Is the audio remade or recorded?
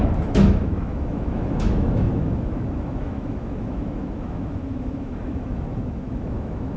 remade